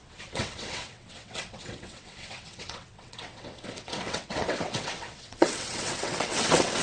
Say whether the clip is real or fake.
fake